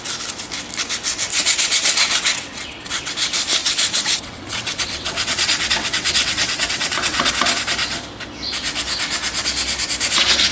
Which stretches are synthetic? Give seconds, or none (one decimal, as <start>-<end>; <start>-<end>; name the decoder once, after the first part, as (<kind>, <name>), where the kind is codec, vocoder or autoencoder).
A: 1.3-3.1 (vocoder, WaveNeXt); 3.6-7.3